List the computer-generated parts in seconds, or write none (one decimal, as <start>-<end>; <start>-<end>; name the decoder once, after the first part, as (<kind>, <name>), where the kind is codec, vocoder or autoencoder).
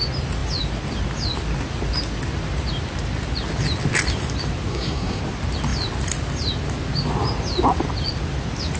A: 4.7-5.2 (codec, SNAC)